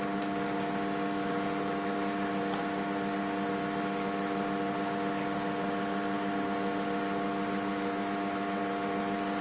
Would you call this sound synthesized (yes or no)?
no